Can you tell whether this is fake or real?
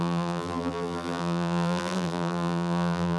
fake